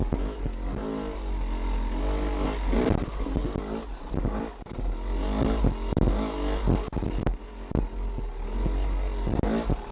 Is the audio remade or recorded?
recorded